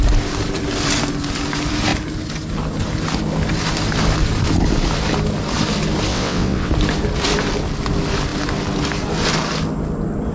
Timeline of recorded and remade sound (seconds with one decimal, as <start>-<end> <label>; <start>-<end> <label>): 0.0-6.1 recorded; 6.1-6.7 remade; 6.7-10.3 recorded